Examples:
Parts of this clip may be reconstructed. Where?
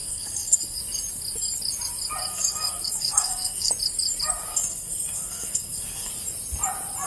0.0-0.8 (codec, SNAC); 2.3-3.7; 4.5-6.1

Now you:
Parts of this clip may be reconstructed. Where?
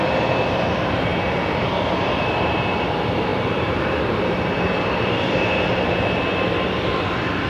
0.0-7.5 (vocoder, BigVGAN v2)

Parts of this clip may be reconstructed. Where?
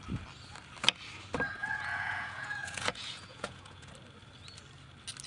1.6-3.9 (vocoder, Vocos)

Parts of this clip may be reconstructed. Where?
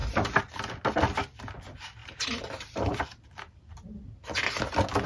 0.0-0.7 (vocoder, BigVGAN v2); 2.0-3.7